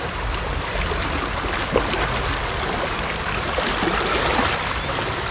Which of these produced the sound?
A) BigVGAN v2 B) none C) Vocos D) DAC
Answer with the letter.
B